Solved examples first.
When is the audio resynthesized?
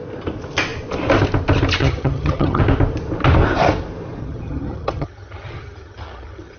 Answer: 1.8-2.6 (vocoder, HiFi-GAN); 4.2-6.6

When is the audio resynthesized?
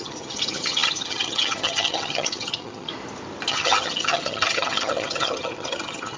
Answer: 0.0-2.9 (vocoder, HiFi-GAN); 3.5-6.2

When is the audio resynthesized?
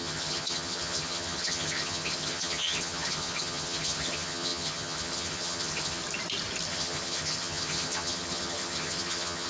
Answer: 0.0-6.0 (vocoder, HiFi-GAN); 6.7-9.5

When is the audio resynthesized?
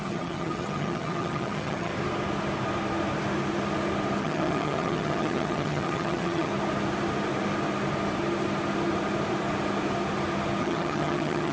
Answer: 0.0-1.9 (vocoder, HiFi-GAN); 4.2-6.5; 10.6-11.5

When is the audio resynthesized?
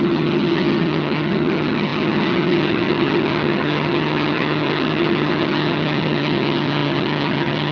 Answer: 0.0-7.7 (vocoder, HiFi-GAN)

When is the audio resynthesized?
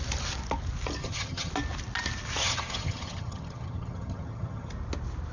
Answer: 1.0-1.5 (vocoder, HiFi-GAN); 2.4-4.7